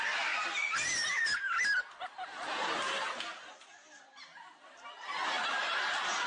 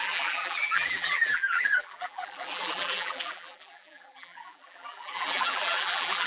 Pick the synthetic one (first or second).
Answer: second